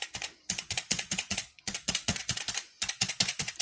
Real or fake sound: fake